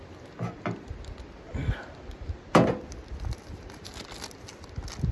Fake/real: real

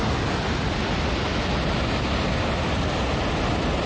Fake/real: real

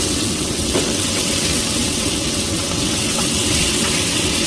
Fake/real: fake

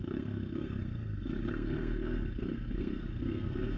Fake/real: fake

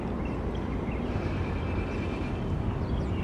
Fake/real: real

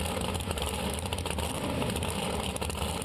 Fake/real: real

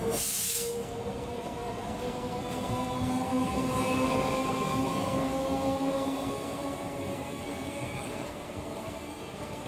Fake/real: fake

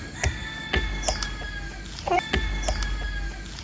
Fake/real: real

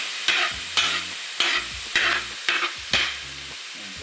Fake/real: real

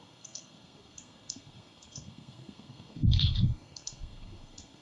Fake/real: fake